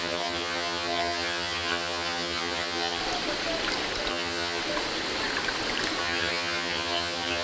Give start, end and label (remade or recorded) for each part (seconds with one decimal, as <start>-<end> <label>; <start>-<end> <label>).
0.0-3.0 remade; 3.0-4.1 recorded; 4.1-4.6 remade; 4.6-6.0 recorded; 6.0-7.4 remade

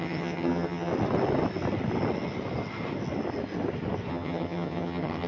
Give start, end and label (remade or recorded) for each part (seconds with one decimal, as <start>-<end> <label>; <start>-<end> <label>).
0.0-0.9 remade; 0.9-4.1 recorded; 4.1-5.3 remade